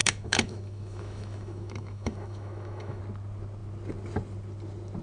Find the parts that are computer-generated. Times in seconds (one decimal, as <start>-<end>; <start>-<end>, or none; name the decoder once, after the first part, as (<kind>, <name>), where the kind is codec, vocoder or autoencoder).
0.0-3.0 (autoencoder, DAC-VAE)